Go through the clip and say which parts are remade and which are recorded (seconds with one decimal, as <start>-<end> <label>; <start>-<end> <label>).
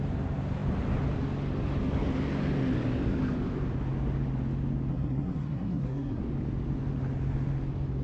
0.0-4.9 recorded; 4.9-6.2 remade; 6.2-8.0 recorded